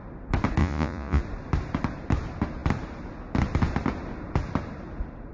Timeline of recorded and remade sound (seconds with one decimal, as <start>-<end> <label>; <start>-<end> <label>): 0.0-0.6 recorded; 0.6-1.2 remade; 1.2-5.3 recorded